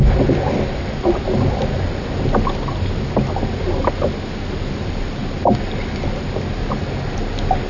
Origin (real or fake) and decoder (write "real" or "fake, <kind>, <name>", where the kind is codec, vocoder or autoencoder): real